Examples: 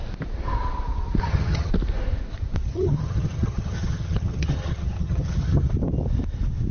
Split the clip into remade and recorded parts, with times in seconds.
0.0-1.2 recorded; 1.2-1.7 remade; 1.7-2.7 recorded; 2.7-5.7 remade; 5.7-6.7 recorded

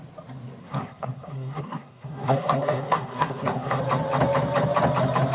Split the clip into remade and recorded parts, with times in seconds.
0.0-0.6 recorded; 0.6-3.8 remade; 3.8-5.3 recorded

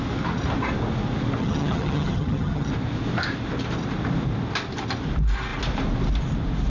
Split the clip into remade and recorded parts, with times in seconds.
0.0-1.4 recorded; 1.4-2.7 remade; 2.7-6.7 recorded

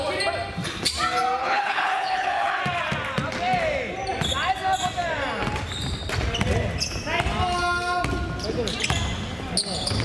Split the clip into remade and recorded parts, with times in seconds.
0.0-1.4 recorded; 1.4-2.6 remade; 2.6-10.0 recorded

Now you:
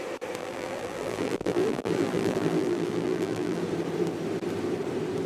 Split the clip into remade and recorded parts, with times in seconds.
0.0-0.4 recorded; 0.4-3.6 remade; 3.6-5.3 recorded

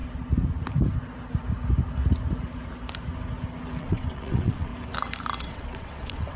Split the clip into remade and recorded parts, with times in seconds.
0.0-3.8 recorded; 3.8-4.7 remade; 4.7-5.4 recorded; 5.4-6.4 remade

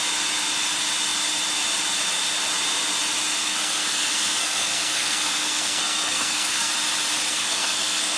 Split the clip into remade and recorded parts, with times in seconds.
0.0-3.4 recorded; 3.4-6.7 remade; 6.7-7.3 recorded; 7.3-8.2 remade